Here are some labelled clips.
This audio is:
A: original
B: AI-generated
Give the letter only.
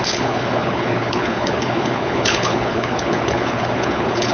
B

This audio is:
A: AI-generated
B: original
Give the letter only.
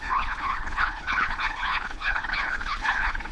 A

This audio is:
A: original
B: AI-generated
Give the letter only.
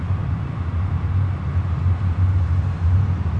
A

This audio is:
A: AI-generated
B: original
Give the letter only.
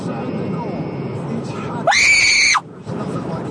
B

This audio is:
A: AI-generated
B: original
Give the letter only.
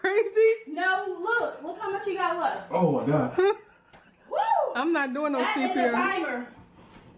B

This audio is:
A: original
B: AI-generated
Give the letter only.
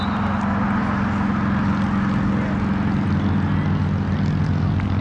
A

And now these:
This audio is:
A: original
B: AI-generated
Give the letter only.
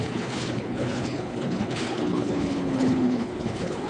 B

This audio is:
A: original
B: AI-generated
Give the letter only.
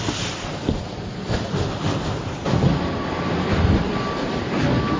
A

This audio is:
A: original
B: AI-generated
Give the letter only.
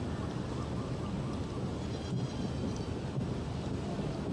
A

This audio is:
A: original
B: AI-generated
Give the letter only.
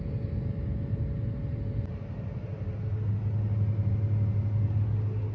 A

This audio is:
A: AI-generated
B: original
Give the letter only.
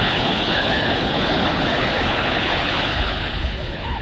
A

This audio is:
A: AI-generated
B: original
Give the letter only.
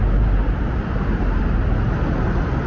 B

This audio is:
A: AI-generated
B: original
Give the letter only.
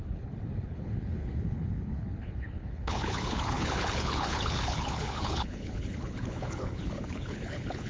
A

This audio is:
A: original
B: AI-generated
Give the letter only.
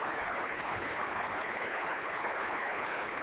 B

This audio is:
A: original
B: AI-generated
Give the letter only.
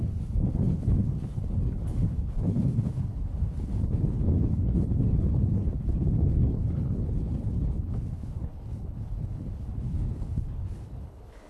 B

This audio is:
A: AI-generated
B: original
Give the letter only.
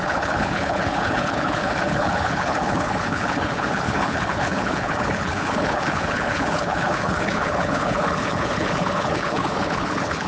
A